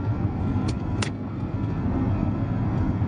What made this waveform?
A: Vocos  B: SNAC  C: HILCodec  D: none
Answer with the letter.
B